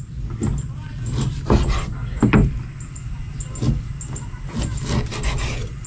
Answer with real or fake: real